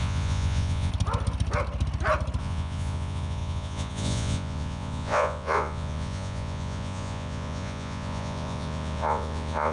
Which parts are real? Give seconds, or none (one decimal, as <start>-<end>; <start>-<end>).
0.9-2.4